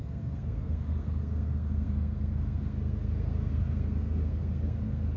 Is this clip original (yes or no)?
no